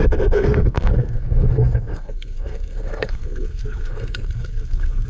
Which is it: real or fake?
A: fake